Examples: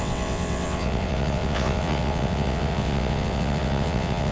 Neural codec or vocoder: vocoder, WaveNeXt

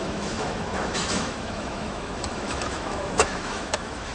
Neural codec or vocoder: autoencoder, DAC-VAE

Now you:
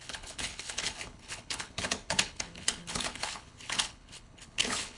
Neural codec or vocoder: codec, HILCodec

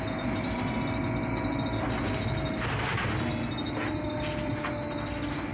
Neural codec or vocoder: none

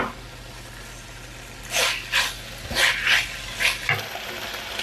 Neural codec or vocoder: none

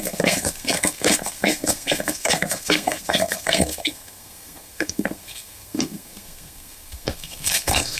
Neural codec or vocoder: codec, SNAC